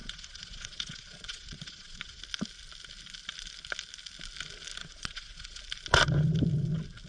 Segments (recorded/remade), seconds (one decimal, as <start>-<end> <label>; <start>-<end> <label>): 0.0-2.2 remade; 2.2-4.8 recorded; 4.8-5.6 remade; 5.6-7.1 recorded